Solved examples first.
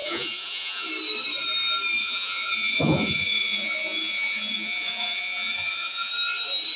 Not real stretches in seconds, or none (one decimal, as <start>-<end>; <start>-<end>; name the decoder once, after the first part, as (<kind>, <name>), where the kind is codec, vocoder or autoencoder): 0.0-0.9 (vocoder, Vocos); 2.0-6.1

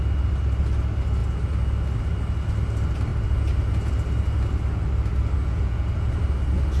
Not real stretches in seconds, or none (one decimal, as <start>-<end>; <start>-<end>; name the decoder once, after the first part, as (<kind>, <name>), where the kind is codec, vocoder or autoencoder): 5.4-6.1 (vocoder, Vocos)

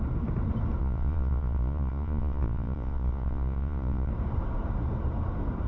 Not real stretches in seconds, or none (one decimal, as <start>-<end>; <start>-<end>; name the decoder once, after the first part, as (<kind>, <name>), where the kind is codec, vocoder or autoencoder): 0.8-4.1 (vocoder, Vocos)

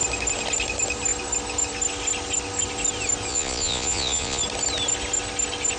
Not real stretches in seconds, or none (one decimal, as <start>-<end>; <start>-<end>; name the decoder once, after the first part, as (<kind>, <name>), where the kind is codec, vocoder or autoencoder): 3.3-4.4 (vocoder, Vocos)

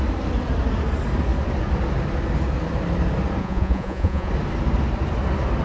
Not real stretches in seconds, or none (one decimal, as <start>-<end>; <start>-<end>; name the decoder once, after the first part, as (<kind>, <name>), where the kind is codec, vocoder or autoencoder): 3.4-4.3 (vocoder, Vocos)